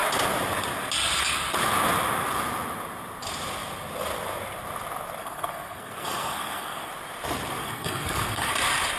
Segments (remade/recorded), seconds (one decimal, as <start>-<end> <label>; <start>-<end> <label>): 0.0-5.2 recorded; 5.2-6.9 remade; 6.9-7.6 recorded; 7.6-8.5 remade; 8.5-9.0 recorded